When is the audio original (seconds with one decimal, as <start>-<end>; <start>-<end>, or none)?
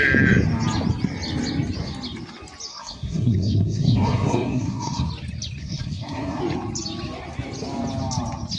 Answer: 0.0-2.7; 5.1-5.6; 6.4-8.6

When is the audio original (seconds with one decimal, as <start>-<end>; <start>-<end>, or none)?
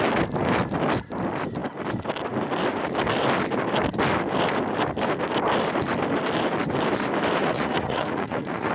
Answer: 0.0-7.4